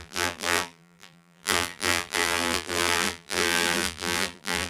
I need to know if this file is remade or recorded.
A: remade